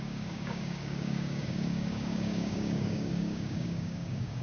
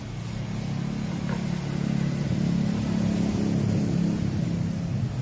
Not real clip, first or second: first